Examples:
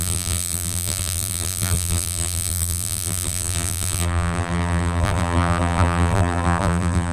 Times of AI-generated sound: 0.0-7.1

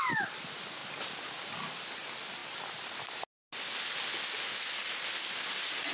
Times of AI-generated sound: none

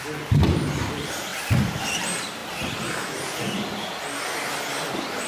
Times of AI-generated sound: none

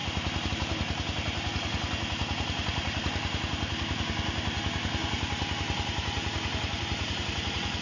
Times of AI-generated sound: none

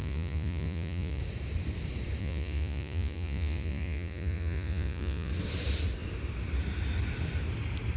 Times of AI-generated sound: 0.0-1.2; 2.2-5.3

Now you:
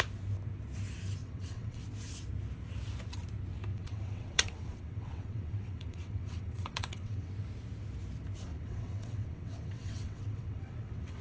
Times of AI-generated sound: 1.2-1.8; 3.7-7.3; 8.5-11.2

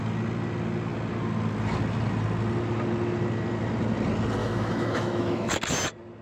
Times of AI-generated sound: 4.4-5.5